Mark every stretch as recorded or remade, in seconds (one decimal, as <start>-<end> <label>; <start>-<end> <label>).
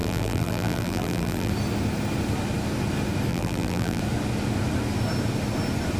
0.0-1.5 remade; 1.5-3.3 recorded; 3.3-4.0 remade; 4.0-6.0 recorded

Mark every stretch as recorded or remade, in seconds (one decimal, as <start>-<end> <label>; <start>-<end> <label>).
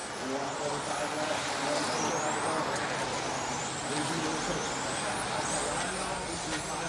0.0-6.9 recorded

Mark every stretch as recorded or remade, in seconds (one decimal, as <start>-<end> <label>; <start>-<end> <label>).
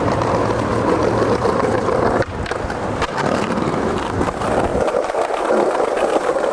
0.0-0.7 recorded; 0.7-2.3 remade; 2.3-4.7 recorded; 4.7-5.5 remade; 5.5-6.5 recorded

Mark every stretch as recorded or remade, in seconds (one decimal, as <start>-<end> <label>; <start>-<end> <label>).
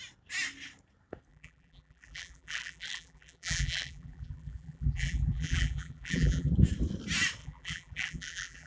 0.0-1.3 recorded; 1.3-6.5 remade; 6.5-7.4 recorded; 7.4-8.7 remade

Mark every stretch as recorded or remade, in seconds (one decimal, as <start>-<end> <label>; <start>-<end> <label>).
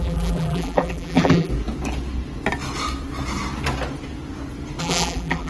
0.0-1.5 remade; 1.5-4.8 recorded; 4.8-5.5 remade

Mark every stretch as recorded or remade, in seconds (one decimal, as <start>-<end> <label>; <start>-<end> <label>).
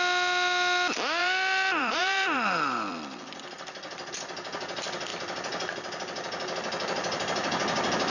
0.0-1.2 recorded; 1.2-4.1 remade; 4.1-5.1 recorded; 5.1-8.1 remade